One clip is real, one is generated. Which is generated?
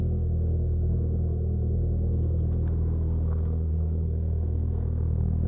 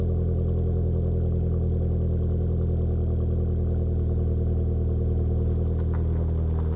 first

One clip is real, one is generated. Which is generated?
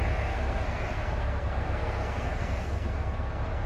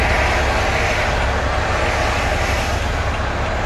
first